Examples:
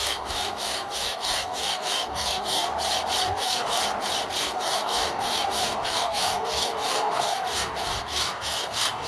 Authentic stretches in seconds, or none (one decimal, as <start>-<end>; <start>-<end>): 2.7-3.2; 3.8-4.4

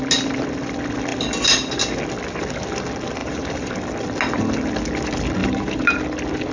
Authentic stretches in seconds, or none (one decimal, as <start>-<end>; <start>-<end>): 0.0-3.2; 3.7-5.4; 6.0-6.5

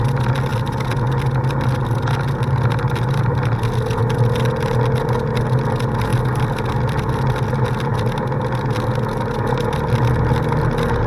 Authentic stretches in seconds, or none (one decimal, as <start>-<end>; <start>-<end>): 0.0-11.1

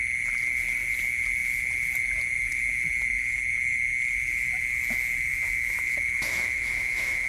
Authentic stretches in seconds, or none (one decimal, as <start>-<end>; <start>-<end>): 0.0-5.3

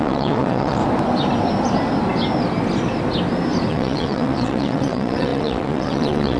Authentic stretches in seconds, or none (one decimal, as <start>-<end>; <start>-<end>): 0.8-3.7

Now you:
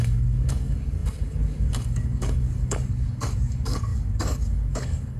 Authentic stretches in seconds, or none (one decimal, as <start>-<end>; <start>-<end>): none

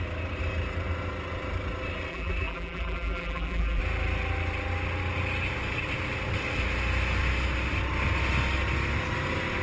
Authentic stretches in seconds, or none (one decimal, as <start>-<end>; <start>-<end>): 0.0-2.1; 3.8-9.6